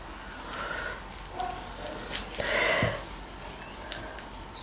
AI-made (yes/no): no